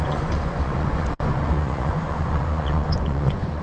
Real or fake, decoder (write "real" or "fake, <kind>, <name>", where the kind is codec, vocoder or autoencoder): fake, vocoder, Vocos